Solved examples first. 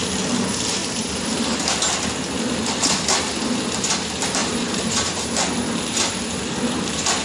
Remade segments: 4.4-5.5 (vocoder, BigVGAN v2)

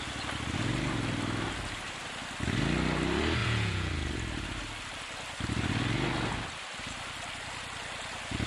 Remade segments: 3.4-3.9 (vocoder, Vocos)